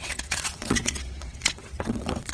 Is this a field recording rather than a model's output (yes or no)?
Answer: no